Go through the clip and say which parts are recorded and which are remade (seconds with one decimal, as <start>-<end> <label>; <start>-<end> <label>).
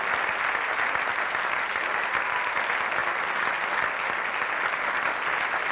0.0-5.7 recorded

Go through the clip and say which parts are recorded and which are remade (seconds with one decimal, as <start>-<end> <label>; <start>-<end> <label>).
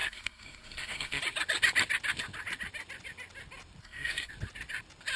0.0-1.2 remade; 1.2-3.8 recorded; 3.8-4.3 remade; 4.3-5.2 recorded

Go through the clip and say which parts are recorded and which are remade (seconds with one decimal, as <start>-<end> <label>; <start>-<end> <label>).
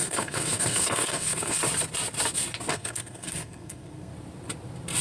0.0-1.6 remade; 1.6-2.7 recorded; 2.7-4.1 remade; 4.1-5.0 recorded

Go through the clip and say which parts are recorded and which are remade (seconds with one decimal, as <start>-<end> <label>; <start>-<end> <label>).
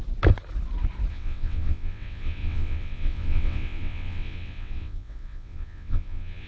0.0-1.1 recorded; 1.1-6.5 remade